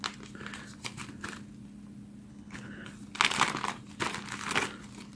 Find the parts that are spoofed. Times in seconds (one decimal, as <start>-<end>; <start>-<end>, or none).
2.3-2.9